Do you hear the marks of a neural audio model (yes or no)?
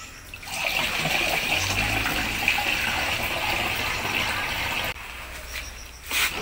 no